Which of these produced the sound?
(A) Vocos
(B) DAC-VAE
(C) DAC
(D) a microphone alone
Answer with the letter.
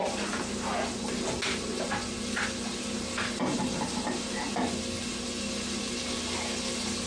D